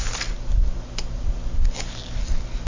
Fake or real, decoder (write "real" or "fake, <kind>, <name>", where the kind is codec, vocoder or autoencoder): real